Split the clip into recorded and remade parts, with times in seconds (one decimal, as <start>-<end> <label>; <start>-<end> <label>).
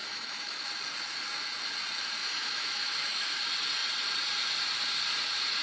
0.0-0.6 remade; 0.6-2.2 recorded; 2.2-3.4 remade; 3.4-5.6 recorded